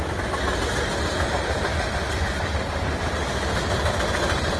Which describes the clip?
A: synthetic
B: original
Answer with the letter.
B